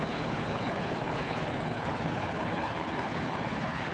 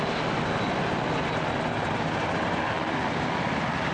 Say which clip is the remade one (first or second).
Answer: first